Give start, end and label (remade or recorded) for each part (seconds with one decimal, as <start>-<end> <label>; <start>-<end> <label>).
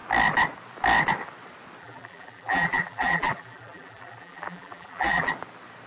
0.0-1.8 recorded; 1.8-5.3 remade; 5.3-5.9 recorded